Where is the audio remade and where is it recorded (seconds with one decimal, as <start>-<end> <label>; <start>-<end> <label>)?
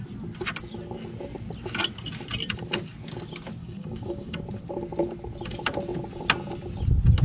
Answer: 0.0-3.6 recorded; 3.6-4.4 remade; 4.4-7.2 recorded